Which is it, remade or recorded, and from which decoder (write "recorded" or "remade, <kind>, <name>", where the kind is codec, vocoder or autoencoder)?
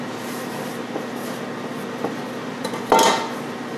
recorded